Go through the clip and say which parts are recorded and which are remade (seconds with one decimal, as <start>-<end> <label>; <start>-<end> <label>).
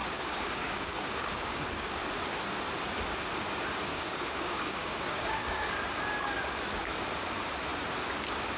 0.0-2.0 remade; 2.0-3.9 recorded; 3.9-5.7 remade; 5.7-8.6 recorded